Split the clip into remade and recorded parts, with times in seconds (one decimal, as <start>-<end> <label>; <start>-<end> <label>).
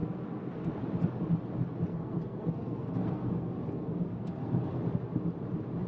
0.0-0.8 remade; 0.8-1.9 recorded; 1.9-4.8 remade; 4.8-5.9 recorded